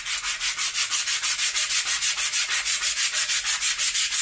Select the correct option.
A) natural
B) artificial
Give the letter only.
A